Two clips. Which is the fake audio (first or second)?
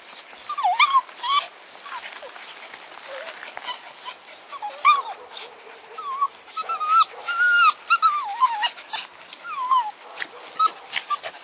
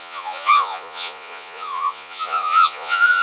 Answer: second